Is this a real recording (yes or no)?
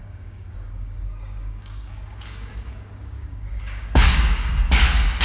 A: no